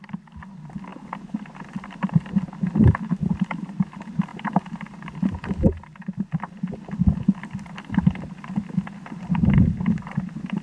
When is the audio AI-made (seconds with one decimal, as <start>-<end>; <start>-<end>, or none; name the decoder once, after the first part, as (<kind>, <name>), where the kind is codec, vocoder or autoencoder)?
none